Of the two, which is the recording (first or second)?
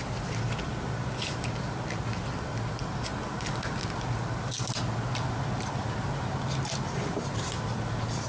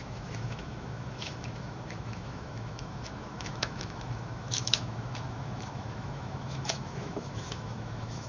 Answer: first